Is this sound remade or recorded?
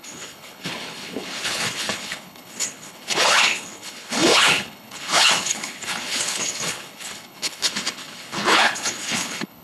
remade